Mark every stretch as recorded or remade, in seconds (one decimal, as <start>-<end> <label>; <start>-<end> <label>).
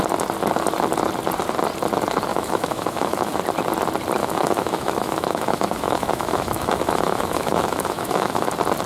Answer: 0.0-2.3 recorded; 2.3-3.4 remade; 3.4-4.2 recorded; 4.2-8.5 remade; 8.5-8.9 recorded